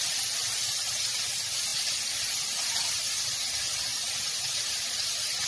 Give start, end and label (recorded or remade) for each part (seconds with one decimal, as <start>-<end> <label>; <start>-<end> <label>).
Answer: 0.0-0.4 recorded; 0.4-0.9 remade; 0.9-3.9 recorded; 3.9-5.5 remade